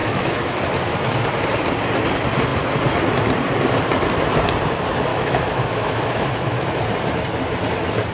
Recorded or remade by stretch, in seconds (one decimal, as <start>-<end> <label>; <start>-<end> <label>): 0.0-0.6 remade; 0.6-5.1 recorded; 5.1-6.8 remade; 6.8-8.1 recorded